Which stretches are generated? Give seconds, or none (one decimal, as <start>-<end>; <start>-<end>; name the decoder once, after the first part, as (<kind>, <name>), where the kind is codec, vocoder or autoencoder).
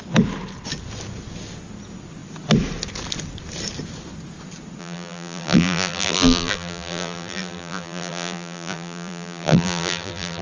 4.8-10.4 (vocoder, BigVGAN v2)